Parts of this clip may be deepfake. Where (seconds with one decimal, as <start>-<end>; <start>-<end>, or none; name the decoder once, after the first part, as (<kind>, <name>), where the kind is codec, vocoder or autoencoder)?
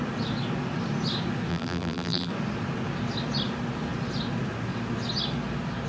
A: 1.5-2.3 (vocoder, BigVGAN v2)